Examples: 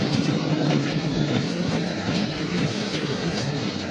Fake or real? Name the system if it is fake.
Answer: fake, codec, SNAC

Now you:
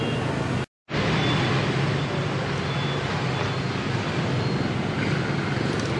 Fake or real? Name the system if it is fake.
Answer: real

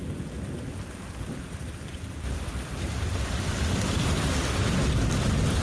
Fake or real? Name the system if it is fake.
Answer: real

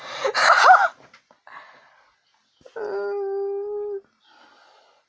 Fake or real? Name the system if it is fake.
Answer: real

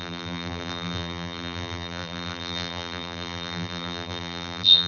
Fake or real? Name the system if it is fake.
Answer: fake, vocoder, BigVGAN v2